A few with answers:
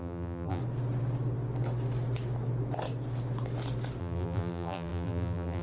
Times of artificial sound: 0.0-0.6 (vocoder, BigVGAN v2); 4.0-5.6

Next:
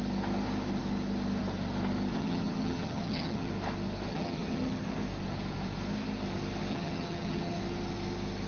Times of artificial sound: 2.1-3.5 (vocoder, HiFi-GAN); 4.1-4.9; 6.7-7.6

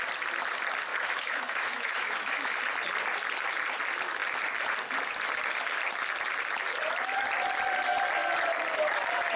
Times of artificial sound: 0.9-2.6 (autoencoder, DAC-VAE)

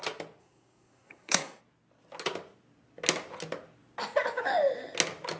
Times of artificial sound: 0.4-1.6 (codec, SNAC)